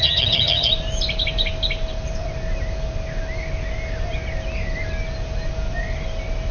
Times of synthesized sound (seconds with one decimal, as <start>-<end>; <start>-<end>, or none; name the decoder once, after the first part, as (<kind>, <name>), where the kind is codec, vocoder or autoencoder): 0.0-0.7 (vocoder, HiFi-GAN)